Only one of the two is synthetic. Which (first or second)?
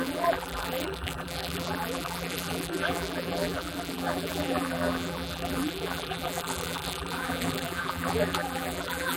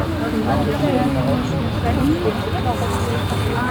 first